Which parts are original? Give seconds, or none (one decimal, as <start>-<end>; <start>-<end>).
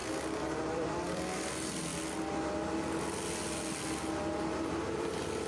0.0-0.6; 1.9-4.7